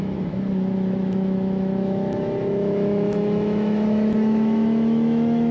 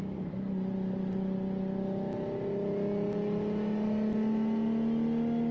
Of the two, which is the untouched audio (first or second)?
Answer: second